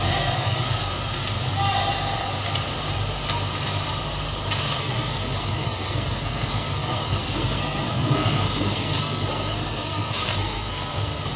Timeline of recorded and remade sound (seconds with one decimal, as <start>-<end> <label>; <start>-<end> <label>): 0.0-1.2 remade; 1.2-4.6 recorded; 4.6-11.4 remade

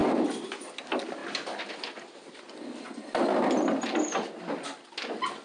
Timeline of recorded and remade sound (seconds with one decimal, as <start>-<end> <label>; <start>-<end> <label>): 0.0-5.4 recorded